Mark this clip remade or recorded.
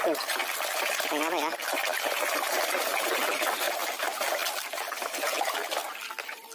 recorded